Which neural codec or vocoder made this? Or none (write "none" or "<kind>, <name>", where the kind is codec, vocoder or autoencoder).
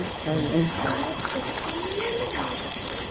codec, HILCodec